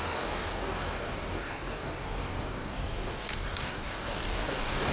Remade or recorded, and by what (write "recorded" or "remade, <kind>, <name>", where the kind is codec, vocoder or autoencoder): remade, codec, DAC